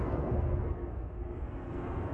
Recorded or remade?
remade